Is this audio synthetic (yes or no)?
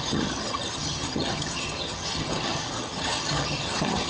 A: yes